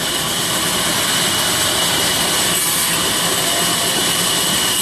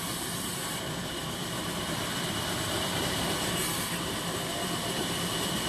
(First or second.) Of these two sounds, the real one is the first